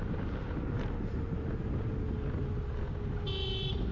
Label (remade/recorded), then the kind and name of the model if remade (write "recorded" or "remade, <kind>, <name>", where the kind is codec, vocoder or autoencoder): recorded